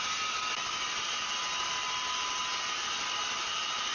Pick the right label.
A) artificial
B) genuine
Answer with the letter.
B